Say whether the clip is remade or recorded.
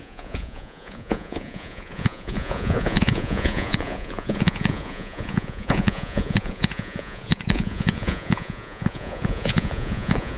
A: remade